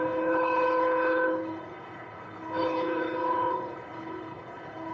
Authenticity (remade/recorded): remade